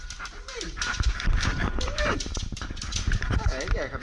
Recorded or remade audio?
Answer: remade